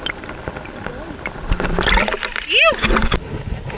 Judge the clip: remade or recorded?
recorded